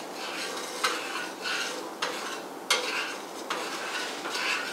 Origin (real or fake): real